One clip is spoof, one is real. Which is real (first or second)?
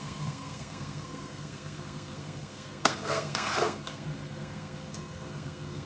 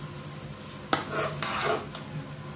second